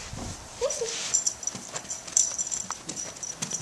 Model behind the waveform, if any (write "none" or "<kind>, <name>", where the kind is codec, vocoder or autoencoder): none